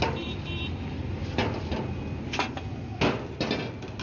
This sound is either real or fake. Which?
real